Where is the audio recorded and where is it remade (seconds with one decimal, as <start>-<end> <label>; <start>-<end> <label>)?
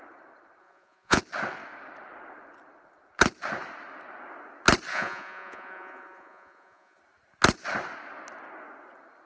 0.0-0.6 recorded; 0.6-1.2 remade; 1.2-4.9 recorded; 4.9-7.0 remade; 7.0-9.3 recorded